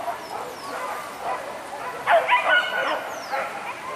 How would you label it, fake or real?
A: real